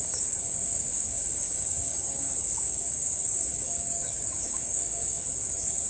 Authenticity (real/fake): fake